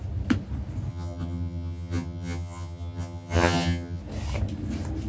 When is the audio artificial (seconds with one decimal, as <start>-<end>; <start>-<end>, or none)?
0.9-4.0